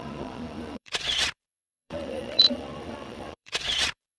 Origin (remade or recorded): remade